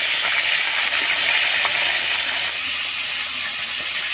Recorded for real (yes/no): yes